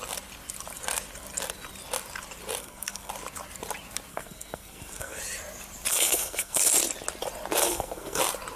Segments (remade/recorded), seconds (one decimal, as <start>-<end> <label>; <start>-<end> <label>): 0.0-2.6 recorded; 2.6-3.1 remade; 3.1-4.1 recorded; 4.1-5.2 remade; 5.2-5.9 recorded; 5.9-6.7 remade; 6.7-7.6 recorded; 7.6-8.2 remade; 8.2-8.6 recorded